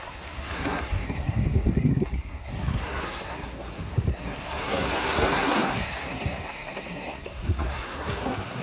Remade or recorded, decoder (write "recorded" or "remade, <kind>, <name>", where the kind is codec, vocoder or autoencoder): remade, codec, SNAC